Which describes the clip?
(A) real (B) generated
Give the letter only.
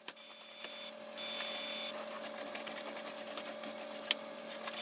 A